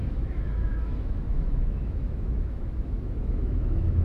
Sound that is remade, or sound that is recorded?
remade